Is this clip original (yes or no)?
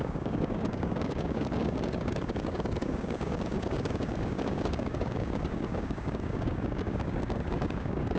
no